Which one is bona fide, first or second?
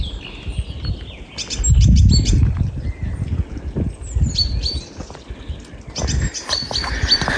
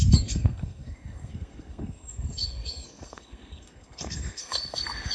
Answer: first